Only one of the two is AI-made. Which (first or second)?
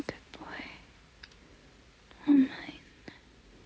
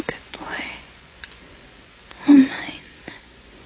second